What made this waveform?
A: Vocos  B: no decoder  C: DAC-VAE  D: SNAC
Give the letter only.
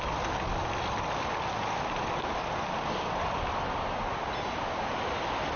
B